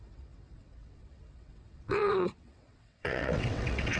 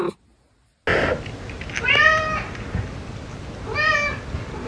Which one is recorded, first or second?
second